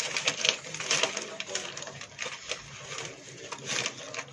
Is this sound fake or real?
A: real